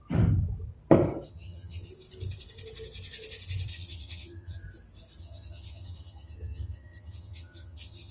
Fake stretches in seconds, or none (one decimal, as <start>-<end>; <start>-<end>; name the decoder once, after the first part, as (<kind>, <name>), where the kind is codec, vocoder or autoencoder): 1.3-1.9 (vocoder, HiFi-GAN); 3.7-4.6; 5.2-8.1